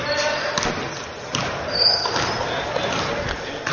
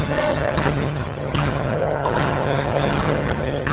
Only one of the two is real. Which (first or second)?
first